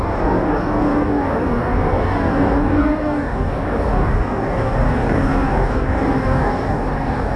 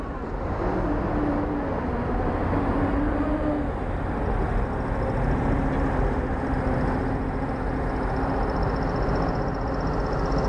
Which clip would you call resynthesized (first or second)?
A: first